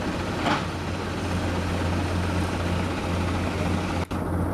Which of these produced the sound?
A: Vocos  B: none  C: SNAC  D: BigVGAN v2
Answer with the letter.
B